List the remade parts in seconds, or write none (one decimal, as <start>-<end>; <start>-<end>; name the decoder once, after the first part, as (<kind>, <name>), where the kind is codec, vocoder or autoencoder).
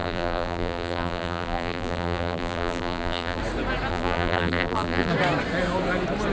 0.0-3.4 (vocoder, BigVGAN v2); 3.9-5.1